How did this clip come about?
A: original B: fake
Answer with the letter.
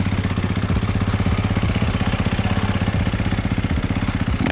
A